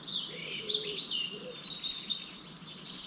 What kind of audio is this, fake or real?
real